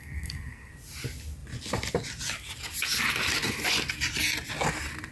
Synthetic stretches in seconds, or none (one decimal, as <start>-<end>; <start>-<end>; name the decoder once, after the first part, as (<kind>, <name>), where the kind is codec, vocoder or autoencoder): 0.0-0.7 (codec, SNAC)